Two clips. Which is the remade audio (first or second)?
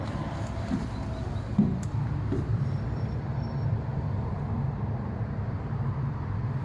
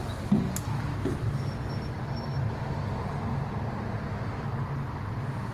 first